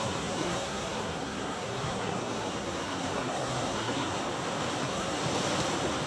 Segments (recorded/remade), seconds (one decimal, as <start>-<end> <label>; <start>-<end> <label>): 0.0-4.2 remade; 4.2-4.8 recorded; 4.8-5.2 remade; 5.2-6.1 recorded

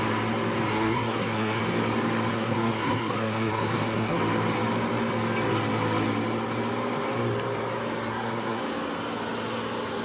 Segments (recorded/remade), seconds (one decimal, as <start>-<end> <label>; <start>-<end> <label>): 0.0-0.7 recorded; 0.7-1.6 remade; 1.6-2.3 recorded; 2.3-4.2 remade; 4.2-8.1 recorded; 8.1-8.6 remade; 8.6-10.0 recorded

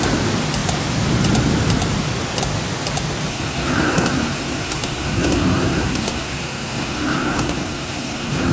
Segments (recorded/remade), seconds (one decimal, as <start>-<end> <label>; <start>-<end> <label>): 0.0-3.3 recorded; 3.3-8.5 remade